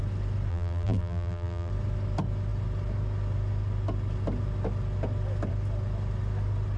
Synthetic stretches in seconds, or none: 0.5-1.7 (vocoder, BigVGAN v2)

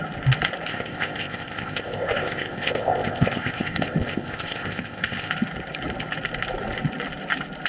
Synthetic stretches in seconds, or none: 0.7-5.3 (codec, ZipCodec)

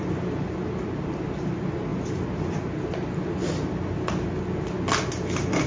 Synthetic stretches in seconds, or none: none

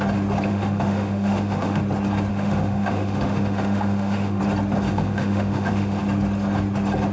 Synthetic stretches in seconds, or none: 0.5-1.8 (autoencoder, DAC-VAE); 2.3-4.4; 4.9-6.0

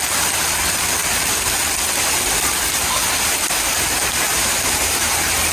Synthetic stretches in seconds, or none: 4.3-5.1 (vocoder, BigVGAN v2)

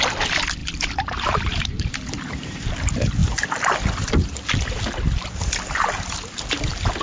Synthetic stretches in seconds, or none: 0.6-2.7 (vocoder, BigVGAN v2)